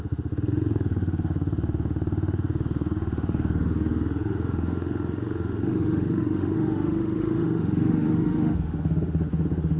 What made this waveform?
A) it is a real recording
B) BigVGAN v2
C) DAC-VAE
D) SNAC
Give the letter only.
C